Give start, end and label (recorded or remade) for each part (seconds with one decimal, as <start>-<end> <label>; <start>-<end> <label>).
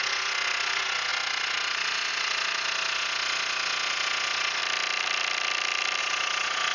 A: 0.0-4.6 remade; 4.6-6.0 recorded; 6.0-6.7 remade